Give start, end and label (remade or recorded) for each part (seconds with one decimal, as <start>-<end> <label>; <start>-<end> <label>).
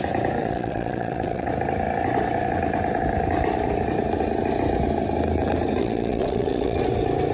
0.0-0.4 recorded; 0.4-1.5 remade; 1.5-5.8 recorded; 5.8-6.8 remade; 6.8-7.3 recorded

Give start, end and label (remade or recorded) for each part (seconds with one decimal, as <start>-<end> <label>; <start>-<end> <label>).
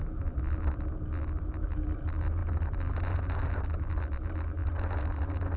0.0-5.6 recorded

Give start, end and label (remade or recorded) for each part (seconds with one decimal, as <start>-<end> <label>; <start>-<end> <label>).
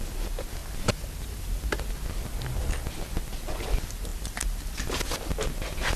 0.0-6.0 recorded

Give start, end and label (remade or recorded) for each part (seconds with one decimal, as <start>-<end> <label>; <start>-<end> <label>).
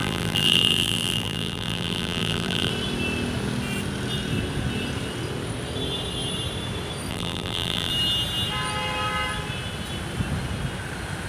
0.0-2.7 remade; 2.7-7.1 recorded; 7.1-7.9 remade; 7.9-11.3 recorded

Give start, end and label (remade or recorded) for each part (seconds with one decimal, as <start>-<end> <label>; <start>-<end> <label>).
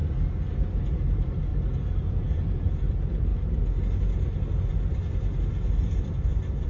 0.0-0.6 recorded; 0.6-1.5 remade; 1.5-2.1 recorded; 2.1-3.3 remade; 3.3-4.7 recorded; 4.7-6.7 remade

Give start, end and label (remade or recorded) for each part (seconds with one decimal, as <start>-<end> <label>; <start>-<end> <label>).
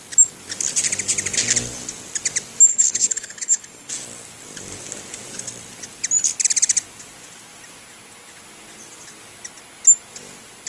0.0-2.7 recorded; 2.7-3.9 remade; 3.9-10.7 recorded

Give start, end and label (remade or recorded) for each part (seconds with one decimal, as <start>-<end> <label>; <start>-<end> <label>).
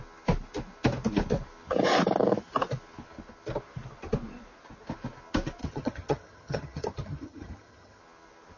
0.0-5.6 recorded; 5.6-8.0 remade; 8.0-8.6 recorded